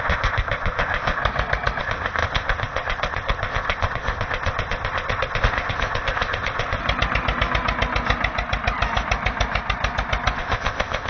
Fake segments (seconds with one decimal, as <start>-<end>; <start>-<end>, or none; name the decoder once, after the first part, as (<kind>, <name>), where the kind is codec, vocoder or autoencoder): 0.0-1.2 (codec, ZipCodec); 1.8-6.8; 10.4-11.1